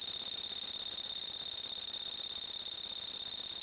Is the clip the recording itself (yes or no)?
yes